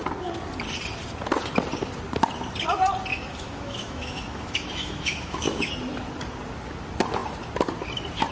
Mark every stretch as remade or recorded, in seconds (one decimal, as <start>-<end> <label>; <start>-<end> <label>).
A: 0.0-3.1 recorded; 3.1-5.7 remade; 5.7-8.3 recorded